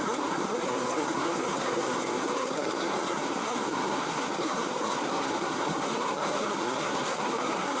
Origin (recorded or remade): remade